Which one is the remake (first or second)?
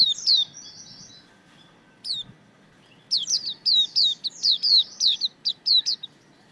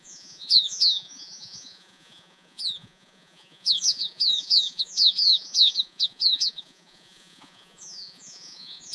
second